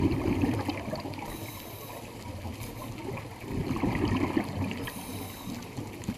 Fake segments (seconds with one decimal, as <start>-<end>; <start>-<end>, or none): none